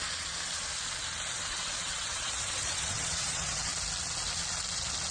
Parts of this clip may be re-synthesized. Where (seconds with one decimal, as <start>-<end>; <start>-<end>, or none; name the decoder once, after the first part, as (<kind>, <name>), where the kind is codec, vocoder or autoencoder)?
1.4-3.7 (vocoder, WaveNeXt)